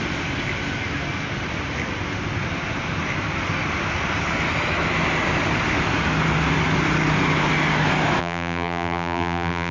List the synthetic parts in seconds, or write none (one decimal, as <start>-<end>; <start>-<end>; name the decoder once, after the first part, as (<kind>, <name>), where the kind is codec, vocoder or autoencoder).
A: 8.2-9.7 (vocoder, BigVGAN v2)